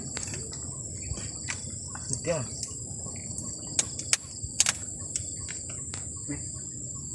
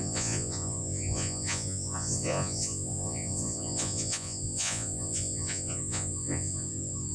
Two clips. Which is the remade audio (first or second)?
second